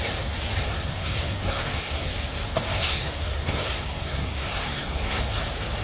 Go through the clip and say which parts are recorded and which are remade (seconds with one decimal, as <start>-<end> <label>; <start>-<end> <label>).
0.0-0.6 recorded; 0.6-2.1 remade; 2.1-2.7 recorded; 2.7-5.2 remade; 5.2-5.8 recorded